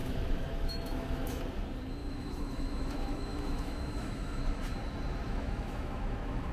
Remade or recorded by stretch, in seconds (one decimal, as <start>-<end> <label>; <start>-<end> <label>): 0.0-1.4 remade; 1.4-2.0 recorded; 2.0-4.4 remade; 4.4-5.2 recorded; 5.2-6.5 remade